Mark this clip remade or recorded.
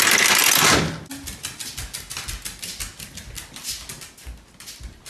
recorded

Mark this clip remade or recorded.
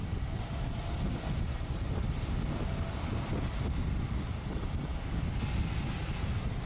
recorded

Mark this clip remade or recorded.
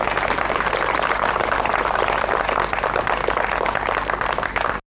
recorded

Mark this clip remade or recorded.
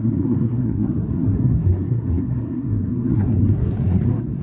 remade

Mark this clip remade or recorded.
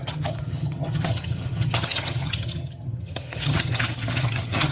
remade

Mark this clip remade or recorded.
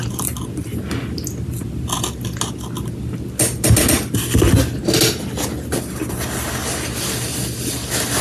recorded